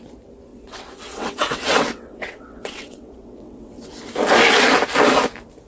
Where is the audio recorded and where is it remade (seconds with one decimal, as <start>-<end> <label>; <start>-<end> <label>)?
0.0-0.5 recorded; 0.5-3.9 remade; 3.9-5.7 recorded